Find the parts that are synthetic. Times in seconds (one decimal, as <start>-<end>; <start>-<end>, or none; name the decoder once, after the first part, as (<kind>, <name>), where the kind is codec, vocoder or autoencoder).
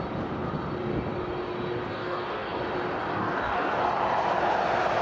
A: 1.9-2.6 (codec, DAC); 3.1-3.8